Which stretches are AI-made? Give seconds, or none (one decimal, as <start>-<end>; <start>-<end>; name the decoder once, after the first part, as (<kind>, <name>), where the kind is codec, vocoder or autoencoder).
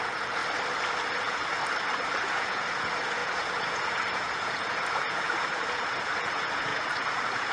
0.0-0.4 (vocoder, Vocos); 1.2-1.6; 2.3-7.5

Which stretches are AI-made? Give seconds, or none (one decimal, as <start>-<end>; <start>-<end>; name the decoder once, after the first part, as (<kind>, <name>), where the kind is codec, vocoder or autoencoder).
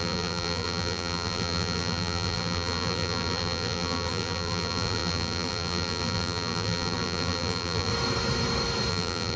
0.0-7.9 (vocoder, BigVGAN v2); 8.9-9.4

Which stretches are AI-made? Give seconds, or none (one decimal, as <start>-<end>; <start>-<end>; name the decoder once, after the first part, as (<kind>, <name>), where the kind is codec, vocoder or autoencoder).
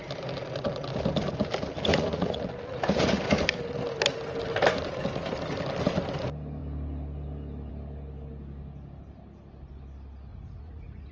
1.9-2.4 (vocoder, Vocos); 10.3-11.1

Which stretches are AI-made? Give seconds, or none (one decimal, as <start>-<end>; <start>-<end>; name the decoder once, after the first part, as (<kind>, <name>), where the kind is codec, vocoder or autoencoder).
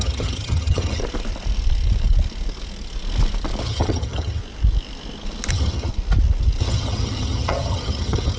0.0-1.0 (vocoder, HiFi-GAN); 3.6-4.4; 5.5-5.9; 6.6-8.4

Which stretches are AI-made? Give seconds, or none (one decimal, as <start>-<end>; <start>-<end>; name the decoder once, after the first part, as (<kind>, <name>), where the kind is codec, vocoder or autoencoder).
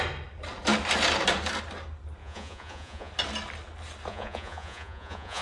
2.2-3.1 (vocoder, Vocos); 4.1-5.4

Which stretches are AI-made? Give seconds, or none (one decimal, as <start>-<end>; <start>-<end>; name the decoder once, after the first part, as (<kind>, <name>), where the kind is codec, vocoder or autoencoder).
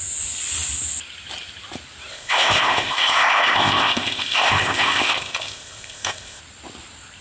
2.1-6.4 (codec, ZipCodec)